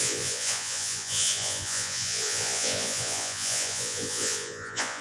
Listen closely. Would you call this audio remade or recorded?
remade